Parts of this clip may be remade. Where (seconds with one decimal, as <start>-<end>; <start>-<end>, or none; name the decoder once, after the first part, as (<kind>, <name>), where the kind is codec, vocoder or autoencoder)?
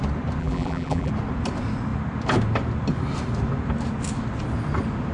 0.4-1.1 (vocoder, BigVGAN v2)